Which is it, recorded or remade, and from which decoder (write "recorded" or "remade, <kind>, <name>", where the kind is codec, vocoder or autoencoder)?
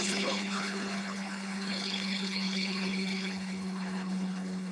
remade, codec, HILCodec